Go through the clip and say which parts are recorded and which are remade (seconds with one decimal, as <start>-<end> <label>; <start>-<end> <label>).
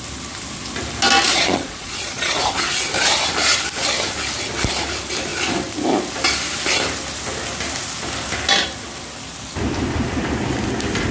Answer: 0.0-1.3 recorded; 1.3-2.7 remade; 2.7-11.1 recorded